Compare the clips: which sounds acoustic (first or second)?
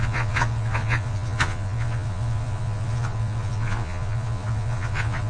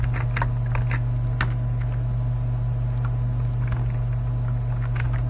second